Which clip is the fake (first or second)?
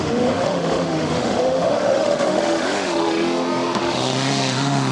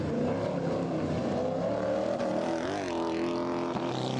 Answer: first